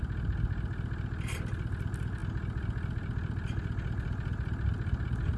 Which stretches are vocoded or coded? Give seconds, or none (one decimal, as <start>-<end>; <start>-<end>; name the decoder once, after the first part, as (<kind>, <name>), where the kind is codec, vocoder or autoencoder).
none